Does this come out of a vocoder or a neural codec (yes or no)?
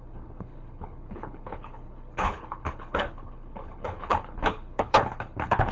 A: yes